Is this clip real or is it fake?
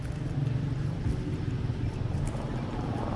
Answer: real